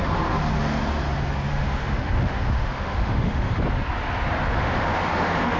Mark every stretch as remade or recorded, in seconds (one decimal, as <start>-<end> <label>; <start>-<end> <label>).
0.0-1.5 recorded; 1.5-3.6 remade; 3.6-4.6 recorded; 4.6-5.6 remade